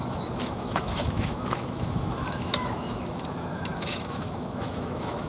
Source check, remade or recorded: remade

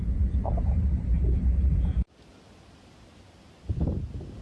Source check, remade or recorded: recorded